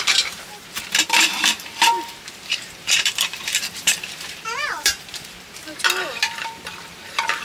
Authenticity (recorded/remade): remade